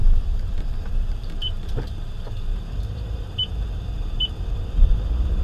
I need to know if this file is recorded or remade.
remade